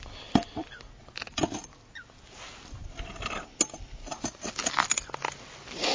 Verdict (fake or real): real